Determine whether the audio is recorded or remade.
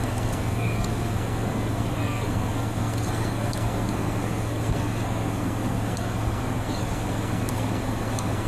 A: remade